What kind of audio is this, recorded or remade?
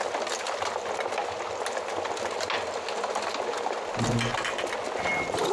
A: recorded